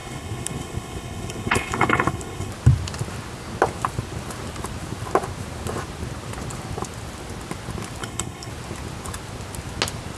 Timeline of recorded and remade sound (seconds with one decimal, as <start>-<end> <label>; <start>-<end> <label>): 0.0-2.5 remade; 2.5-8.0 recorded; 8.0-8.5 remade; 8.5-10.2 recorded